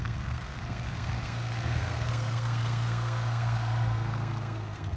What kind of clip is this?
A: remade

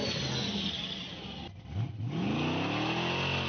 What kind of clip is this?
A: recorded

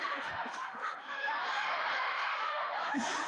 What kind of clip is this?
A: remade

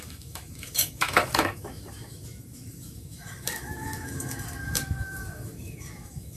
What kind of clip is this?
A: remade